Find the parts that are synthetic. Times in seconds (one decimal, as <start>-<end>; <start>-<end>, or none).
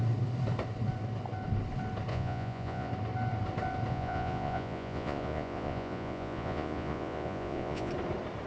2.1-2.9; 3.9-7.9